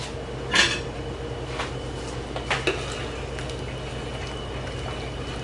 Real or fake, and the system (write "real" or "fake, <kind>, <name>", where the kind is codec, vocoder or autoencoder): real